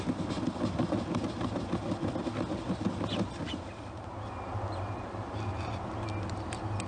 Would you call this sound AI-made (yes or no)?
no